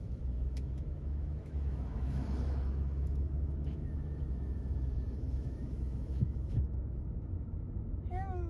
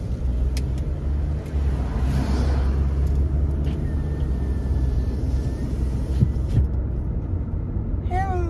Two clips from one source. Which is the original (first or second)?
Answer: second